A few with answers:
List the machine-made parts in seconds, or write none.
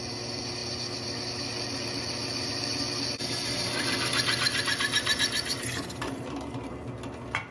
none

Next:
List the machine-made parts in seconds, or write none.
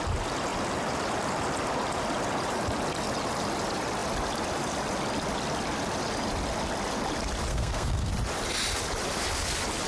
7.5-8.1 (codec, SNAC)